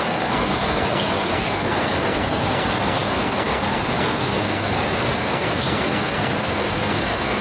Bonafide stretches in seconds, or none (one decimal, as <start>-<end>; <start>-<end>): none